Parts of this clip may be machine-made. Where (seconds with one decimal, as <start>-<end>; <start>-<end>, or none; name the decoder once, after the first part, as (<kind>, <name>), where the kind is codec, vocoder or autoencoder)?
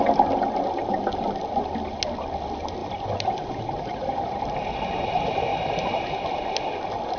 2.8-4.4 (vocoder, BigVGAN v2); 5.5-6.5